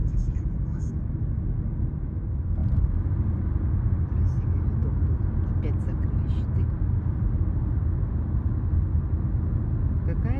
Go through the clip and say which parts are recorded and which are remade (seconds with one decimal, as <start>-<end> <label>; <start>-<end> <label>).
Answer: 0.0-0.8 remade; 0.8-10.4 recorded